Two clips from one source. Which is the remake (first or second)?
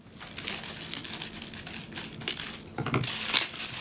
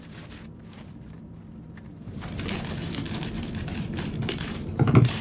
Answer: second